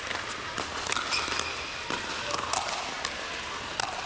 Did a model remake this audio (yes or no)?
no